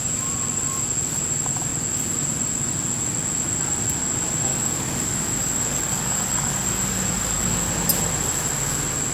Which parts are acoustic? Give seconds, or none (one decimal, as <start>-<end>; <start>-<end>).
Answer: 0.0-4.5; 7.7-9.1